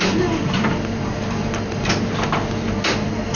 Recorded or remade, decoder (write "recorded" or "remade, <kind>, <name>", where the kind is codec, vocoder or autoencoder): recorded